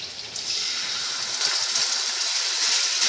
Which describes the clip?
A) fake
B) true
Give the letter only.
B